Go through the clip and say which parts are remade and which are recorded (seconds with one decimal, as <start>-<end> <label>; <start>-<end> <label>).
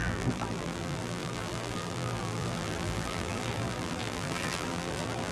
0.0-5.3 remade